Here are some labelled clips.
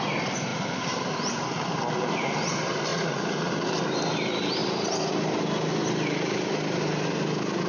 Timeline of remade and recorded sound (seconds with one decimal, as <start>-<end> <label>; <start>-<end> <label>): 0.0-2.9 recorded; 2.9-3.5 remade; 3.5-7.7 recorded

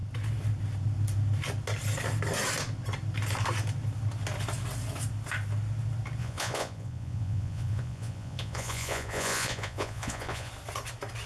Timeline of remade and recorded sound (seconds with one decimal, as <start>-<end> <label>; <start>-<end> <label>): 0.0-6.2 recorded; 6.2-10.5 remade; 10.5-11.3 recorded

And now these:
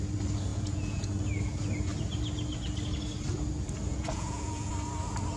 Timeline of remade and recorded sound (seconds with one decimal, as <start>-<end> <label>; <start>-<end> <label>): 0.0-0.5 recorded; 0.5-1.1 remade; 1.1-3.9 recorded; 3.9-4.7 remade; 4.7-5.4 recorded